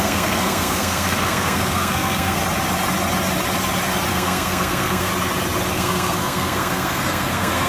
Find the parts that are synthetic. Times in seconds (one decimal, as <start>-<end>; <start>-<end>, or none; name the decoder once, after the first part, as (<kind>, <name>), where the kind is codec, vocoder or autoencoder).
0.0-2.4 (codec, SNAC); 4.1-5.1; 5.7-7.7